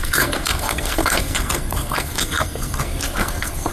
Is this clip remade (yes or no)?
yes